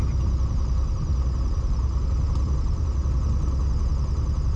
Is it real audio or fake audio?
real